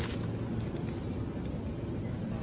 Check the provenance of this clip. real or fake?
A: real